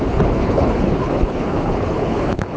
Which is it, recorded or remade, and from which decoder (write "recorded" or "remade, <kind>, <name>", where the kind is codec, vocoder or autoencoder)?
remade, codec, HILCodec